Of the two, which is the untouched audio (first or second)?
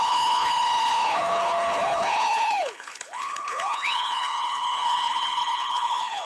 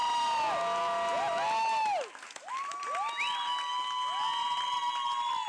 second